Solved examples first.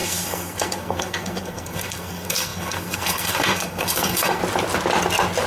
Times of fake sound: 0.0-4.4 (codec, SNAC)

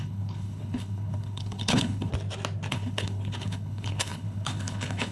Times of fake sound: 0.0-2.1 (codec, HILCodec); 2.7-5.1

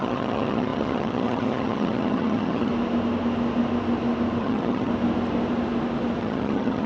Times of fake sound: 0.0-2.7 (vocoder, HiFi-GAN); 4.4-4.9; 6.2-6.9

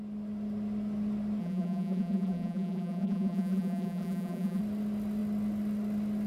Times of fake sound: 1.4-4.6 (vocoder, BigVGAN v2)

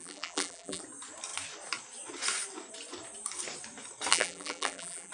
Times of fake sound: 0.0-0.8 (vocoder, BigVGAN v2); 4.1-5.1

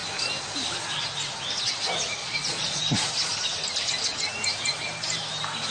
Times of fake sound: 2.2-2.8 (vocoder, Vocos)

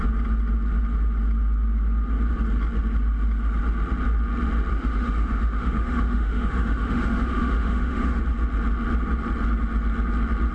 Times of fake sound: 4.7-8.2 (autoencoder, DAC-VAE)

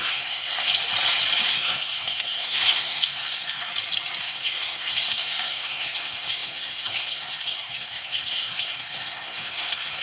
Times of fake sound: 0.0-0.7 (codec, SNAC); 1.4-3.7; 4.2-10.0